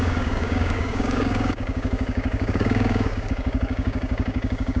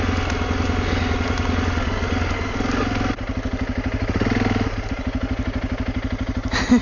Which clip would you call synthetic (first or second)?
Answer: first